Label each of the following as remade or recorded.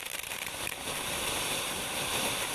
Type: recorded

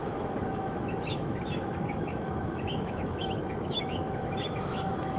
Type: remade